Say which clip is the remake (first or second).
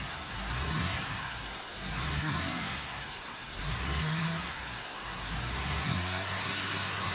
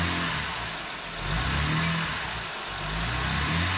first